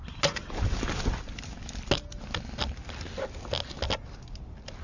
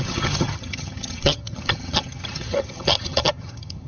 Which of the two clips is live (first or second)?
first